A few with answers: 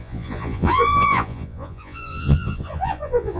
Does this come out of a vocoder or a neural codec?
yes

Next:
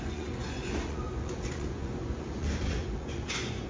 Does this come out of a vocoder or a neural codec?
yes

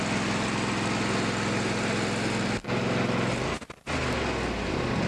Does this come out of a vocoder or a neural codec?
no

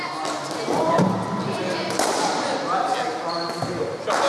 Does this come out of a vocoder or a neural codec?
no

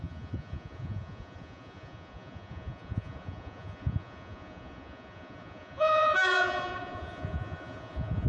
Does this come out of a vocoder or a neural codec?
yes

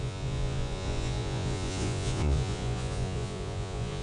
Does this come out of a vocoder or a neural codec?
yes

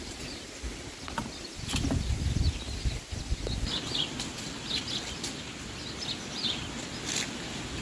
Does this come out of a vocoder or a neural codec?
no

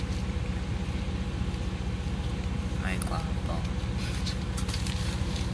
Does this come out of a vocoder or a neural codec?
no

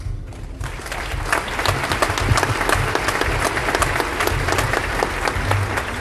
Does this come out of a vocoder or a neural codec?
no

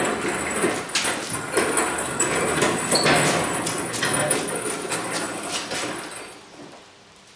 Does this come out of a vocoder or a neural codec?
no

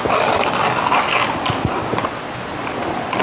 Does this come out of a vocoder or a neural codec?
no